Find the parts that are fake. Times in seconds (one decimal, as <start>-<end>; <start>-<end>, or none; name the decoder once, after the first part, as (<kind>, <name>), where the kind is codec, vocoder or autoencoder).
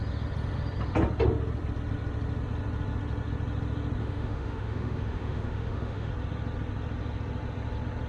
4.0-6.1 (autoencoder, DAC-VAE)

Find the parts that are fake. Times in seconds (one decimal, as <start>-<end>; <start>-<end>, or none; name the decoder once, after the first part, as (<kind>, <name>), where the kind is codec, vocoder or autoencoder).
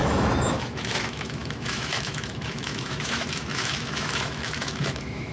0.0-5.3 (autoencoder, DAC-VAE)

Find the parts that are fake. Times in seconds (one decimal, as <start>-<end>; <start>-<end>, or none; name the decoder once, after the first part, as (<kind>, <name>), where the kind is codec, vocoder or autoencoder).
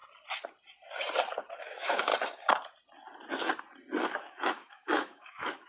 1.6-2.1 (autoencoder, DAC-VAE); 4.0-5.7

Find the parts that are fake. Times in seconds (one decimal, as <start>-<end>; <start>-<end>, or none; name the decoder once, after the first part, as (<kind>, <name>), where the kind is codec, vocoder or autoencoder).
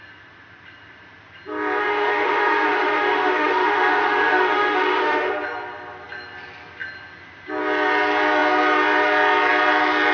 1.8-5.3 (autoencoder, DAC-VAE)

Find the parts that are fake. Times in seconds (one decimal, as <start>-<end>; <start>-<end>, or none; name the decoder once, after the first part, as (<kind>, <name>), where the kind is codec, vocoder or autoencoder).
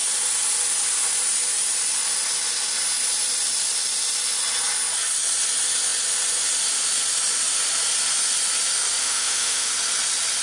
9.0-9.7 (autoencoder, DAC-VAE)